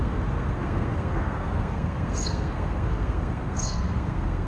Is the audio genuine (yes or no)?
no